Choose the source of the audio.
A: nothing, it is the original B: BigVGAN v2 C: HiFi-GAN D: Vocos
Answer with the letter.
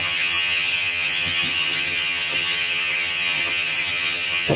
C